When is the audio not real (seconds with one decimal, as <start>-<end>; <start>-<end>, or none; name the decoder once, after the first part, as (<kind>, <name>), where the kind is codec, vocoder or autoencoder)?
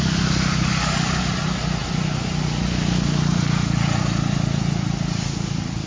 none